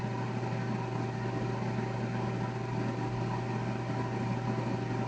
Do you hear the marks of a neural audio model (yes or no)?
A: no